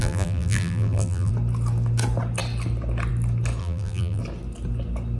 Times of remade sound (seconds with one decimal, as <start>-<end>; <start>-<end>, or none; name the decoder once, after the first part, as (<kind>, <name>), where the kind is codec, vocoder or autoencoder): 0.0-1.3 (vocoder, BigVGAN v2); 3.6-4.2